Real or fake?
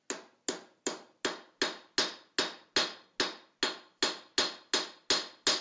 real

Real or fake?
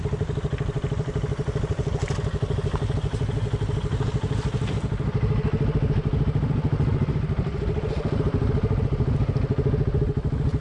real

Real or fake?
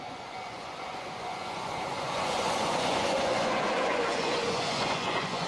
fake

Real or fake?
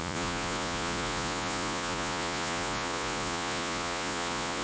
fake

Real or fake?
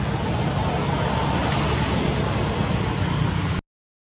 real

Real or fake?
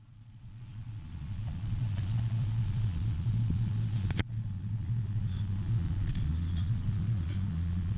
fake